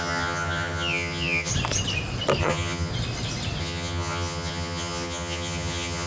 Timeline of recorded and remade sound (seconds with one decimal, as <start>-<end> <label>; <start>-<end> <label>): 0.0-1.5 remade; 1.5-2.4 recorded; 2.4-2.9 remade; 2.9-3.6 recorded; 3.6-6.1 remade